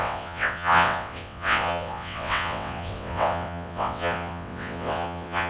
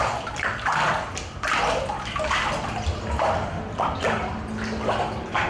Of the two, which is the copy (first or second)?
first